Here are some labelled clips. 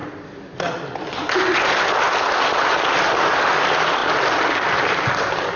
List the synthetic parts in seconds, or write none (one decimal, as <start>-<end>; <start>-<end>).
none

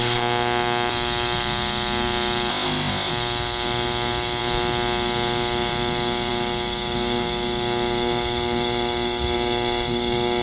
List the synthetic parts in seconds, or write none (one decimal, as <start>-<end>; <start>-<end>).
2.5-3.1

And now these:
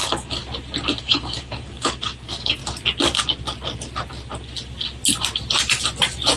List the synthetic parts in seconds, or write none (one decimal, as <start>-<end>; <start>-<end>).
0.0-0.4; 1.0-2.6

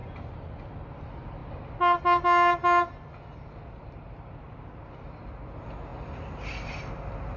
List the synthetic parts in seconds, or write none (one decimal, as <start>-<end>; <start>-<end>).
none

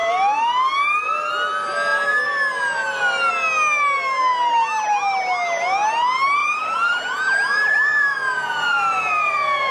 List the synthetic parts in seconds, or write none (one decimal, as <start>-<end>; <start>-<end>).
6.4-9.7

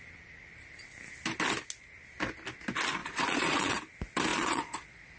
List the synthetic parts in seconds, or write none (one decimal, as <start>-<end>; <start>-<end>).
3.0-3.8; 4.3-5.2

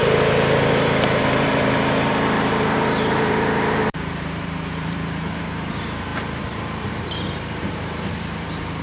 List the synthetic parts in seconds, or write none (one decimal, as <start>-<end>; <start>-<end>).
0.0-8.8

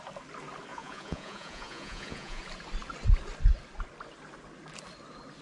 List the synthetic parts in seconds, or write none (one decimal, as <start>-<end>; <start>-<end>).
0.7-2.4